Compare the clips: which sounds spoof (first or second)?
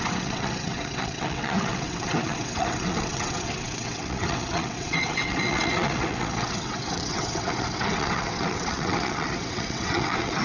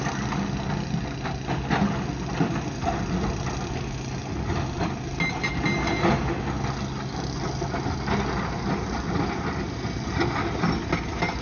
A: first